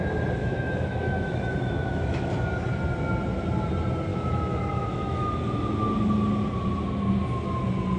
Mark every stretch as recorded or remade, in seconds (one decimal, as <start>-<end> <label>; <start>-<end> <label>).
0.0-0.4 recorded; 0.4-2.3 remade; 2.3-4.1 recorded; 4.1-5.4 remade; 5.4-8.0 recorded